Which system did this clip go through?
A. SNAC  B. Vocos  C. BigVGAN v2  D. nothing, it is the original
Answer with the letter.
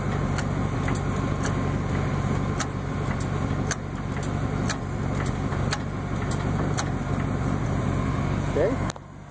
D